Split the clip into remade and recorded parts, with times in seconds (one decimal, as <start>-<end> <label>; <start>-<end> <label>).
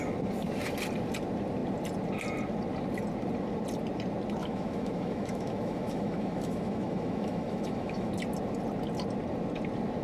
0.0-4.4 recorded; 4.4-8.1 remade; 8.1-10.0 recorded